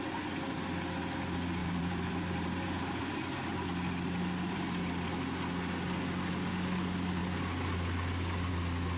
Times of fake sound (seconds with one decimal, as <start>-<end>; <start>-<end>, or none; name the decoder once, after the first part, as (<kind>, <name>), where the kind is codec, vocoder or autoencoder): 1.6-3.0 (vocoder, BigVGAN v2)